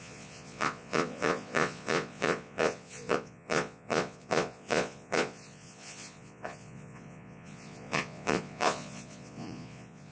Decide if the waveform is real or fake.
fake